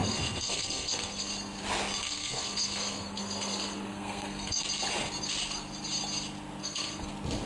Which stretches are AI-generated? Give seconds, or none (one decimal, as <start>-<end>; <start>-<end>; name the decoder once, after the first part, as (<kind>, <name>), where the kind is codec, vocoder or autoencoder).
0.0-1.3 (codec, SNAC); 2.0-4.6; 6.6-7.1